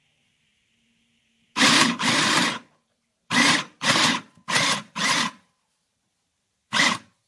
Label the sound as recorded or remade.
remade